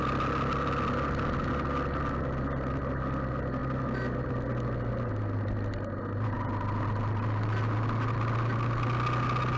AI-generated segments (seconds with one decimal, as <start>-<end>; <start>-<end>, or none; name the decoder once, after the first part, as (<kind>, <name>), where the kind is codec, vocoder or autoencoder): none